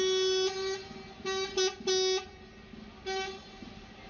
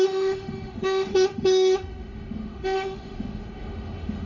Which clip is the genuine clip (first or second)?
first